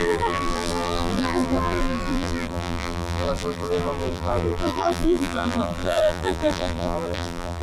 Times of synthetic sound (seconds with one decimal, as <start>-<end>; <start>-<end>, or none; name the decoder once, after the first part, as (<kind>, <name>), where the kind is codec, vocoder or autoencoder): 0.0-7.6 (vocoder, BigVGAN v2)